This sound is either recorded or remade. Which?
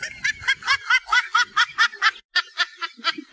recorded